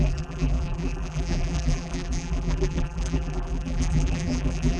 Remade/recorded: remade